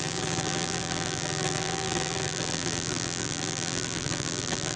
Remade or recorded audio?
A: remade